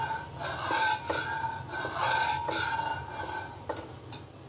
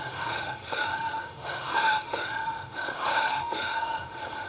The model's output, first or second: second